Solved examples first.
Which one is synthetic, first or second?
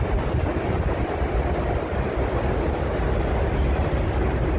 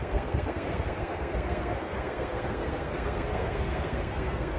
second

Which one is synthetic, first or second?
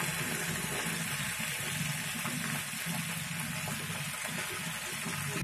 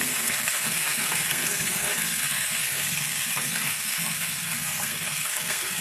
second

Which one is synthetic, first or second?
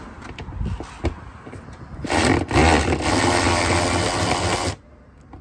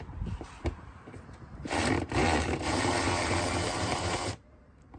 second